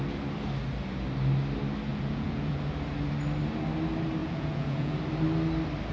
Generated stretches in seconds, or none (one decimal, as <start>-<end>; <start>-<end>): 1.9-2.6; 4.2-4.9